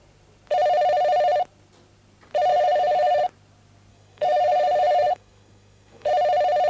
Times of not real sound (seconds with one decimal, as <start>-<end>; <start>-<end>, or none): 2.5-3.2; 3.9-6.1